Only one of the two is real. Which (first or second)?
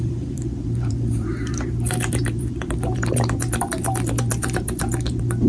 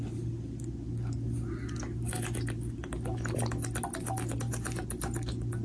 second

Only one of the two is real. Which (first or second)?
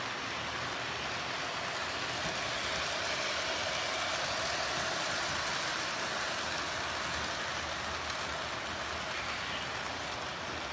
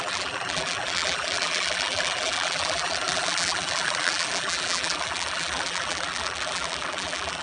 first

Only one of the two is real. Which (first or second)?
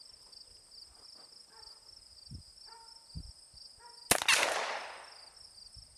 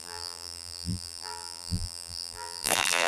first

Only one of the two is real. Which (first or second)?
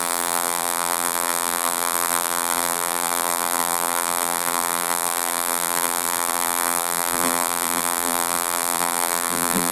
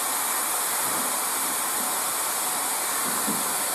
second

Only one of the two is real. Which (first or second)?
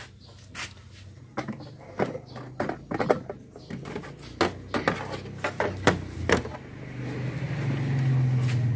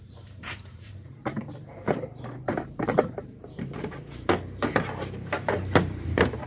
first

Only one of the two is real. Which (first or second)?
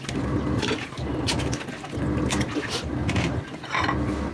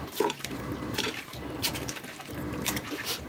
first